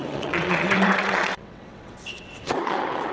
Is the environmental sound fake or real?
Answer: fake